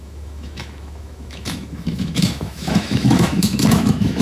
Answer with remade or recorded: remade